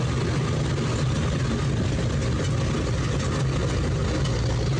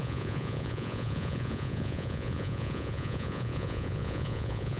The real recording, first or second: first